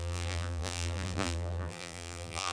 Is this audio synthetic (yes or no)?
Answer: yes